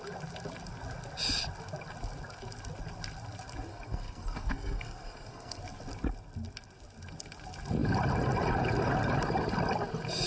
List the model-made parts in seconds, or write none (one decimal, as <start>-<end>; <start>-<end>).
3.7-5.6